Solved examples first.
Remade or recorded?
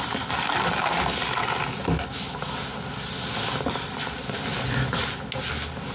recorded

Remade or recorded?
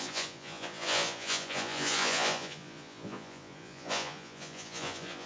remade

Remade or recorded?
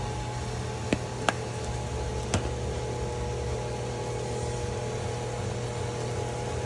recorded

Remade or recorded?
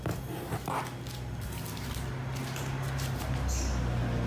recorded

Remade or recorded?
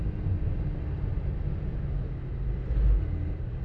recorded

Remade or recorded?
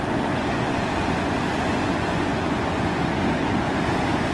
remade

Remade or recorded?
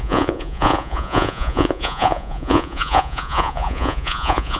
remade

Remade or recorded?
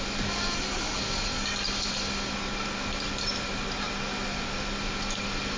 recorded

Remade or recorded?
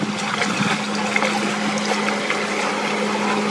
recorded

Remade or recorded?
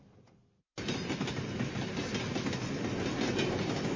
recorded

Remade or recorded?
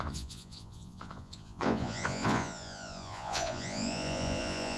remade